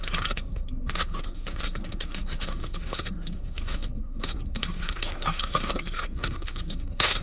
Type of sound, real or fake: fake